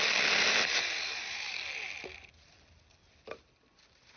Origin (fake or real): real